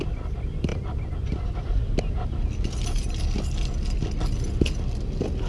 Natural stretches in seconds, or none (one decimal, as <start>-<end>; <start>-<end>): 0.0-5.5